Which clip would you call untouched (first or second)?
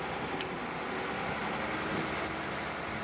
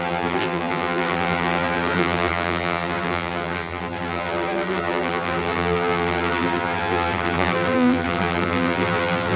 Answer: first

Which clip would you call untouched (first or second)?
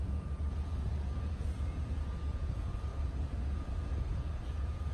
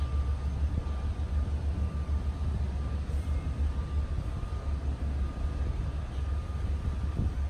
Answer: second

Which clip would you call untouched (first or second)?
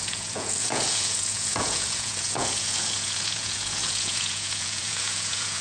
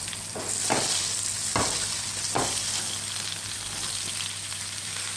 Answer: second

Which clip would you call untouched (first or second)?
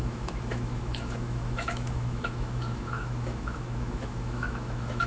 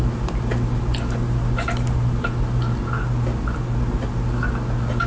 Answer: second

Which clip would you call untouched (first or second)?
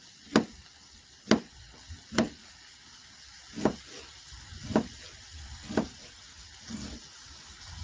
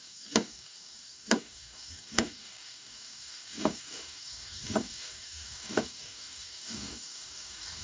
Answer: first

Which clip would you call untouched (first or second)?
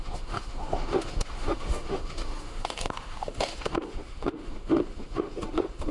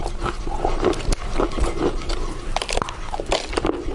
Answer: second